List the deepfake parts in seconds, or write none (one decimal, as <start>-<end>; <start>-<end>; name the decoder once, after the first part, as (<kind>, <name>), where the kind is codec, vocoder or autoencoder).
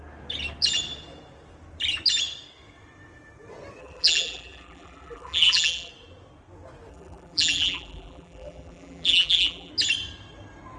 3.8-5.9 (vocoder, BigVGAN v2); 6.9-9.7